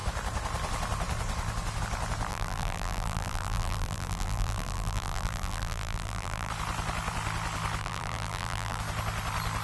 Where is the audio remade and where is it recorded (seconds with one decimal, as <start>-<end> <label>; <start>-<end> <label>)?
0.0-2.3 recorded; 2.3-6.5 remade; 6.5-7.8 recorded; 7.8-8.8 remade; 8.8-9.6 recorded